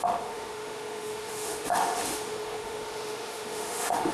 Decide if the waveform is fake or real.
fake